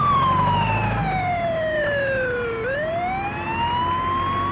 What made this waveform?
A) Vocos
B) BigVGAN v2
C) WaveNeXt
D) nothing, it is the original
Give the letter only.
D